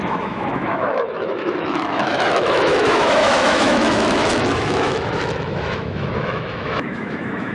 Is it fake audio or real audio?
fake